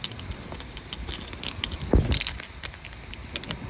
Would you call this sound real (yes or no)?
yes